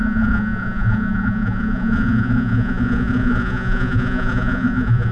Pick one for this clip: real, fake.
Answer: fake